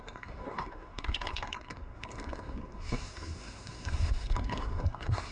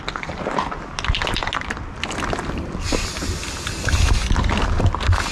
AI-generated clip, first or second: first